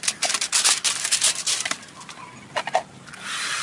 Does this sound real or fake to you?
real